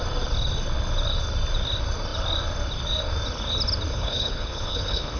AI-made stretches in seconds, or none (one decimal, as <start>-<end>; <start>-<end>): 3.9-5.2